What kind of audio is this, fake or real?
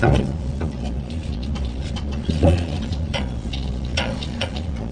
fake